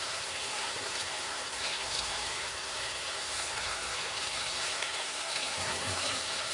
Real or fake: fake